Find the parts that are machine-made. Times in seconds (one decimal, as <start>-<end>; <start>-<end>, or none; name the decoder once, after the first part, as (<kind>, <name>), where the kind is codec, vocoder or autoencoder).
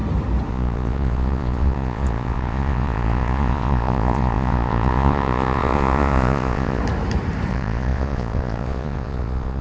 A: 0.5-6.8 (vocoder, Vocos); 7.5-9.6